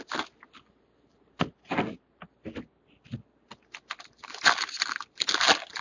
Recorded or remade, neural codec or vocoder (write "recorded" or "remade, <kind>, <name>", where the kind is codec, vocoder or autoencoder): recorded